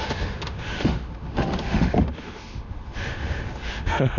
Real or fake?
fake